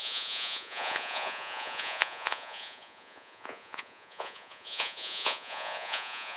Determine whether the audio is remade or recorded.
remade